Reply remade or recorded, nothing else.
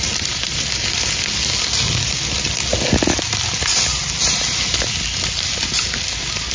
recorded